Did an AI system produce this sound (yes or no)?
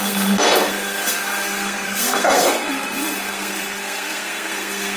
yes